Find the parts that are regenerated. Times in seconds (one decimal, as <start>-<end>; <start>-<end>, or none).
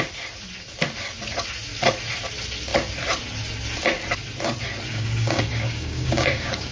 4.9-6.7